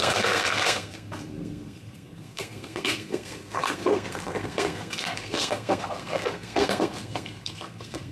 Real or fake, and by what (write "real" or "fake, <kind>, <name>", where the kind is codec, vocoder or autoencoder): fake, codec, SNAC